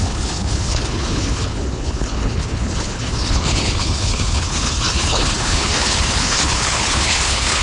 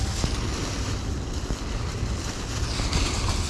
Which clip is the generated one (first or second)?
first